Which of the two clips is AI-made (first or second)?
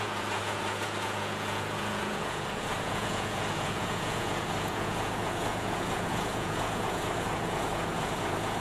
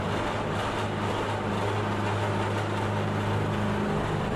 first